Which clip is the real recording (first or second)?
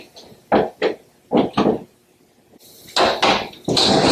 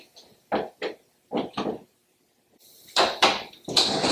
first